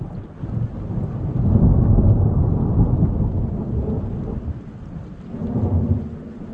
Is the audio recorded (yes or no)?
yes